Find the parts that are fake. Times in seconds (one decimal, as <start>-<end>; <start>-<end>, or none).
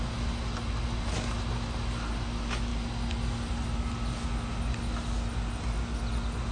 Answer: none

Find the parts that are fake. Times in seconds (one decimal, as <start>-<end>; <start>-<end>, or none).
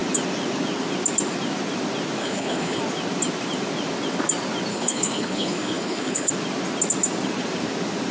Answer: 2.2-2.8; 4.7-6.3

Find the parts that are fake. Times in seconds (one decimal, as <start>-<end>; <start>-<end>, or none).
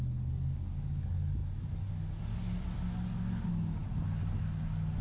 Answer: none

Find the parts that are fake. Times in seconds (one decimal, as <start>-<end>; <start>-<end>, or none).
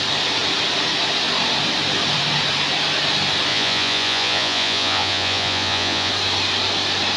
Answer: 3.5-6.1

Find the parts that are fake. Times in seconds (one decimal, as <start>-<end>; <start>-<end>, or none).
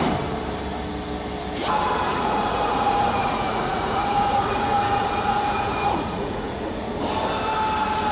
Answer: 2.1-6.9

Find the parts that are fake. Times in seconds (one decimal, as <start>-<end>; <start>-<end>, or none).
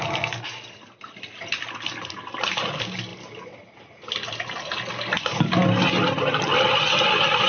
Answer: none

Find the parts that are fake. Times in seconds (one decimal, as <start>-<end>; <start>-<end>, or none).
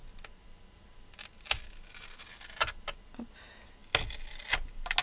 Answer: none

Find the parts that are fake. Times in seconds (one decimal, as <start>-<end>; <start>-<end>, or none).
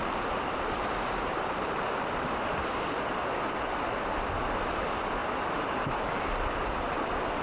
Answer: none